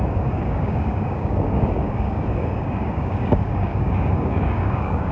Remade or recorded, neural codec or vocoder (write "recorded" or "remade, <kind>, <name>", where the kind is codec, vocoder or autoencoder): remade, codec, DAC